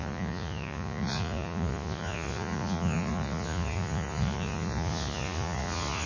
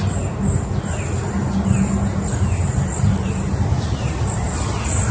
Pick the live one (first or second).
second